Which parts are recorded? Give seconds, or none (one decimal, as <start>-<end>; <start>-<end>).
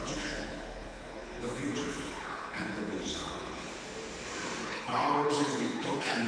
3.7-4.6